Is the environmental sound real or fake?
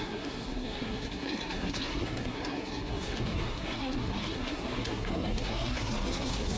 fake